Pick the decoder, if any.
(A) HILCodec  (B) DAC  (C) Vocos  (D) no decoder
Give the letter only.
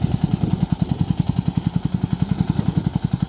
D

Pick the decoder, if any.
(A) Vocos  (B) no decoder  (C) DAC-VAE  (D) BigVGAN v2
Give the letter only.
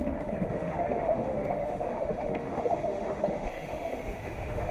C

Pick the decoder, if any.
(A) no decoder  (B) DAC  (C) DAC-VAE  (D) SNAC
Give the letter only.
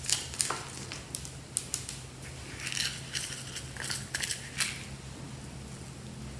A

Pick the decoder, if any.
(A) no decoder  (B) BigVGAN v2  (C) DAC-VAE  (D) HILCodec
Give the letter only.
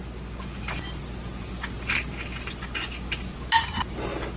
A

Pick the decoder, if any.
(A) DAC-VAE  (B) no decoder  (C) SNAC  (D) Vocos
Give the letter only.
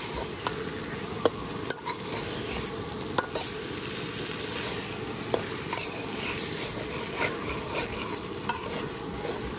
B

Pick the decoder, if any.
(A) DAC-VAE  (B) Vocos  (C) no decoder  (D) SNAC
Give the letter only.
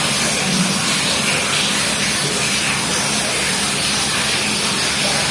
C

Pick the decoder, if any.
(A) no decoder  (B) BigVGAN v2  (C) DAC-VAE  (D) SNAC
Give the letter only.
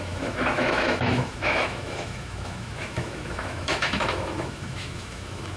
C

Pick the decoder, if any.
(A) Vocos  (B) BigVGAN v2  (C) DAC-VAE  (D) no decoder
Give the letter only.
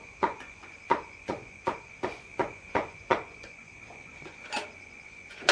A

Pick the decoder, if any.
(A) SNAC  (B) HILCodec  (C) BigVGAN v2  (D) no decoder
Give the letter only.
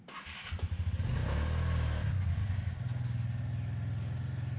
D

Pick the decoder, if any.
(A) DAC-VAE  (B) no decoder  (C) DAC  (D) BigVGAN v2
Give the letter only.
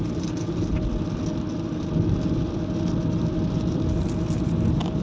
B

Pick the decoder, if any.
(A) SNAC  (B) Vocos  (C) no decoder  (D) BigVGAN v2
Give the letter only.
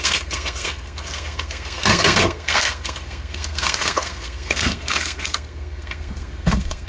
A